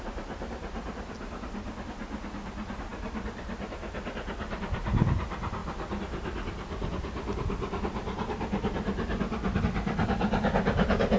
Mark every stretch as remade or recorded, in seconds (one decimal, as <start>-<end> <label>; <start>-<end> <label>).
0.0-11.2 recorded